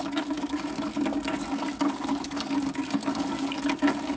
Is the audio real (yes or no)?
no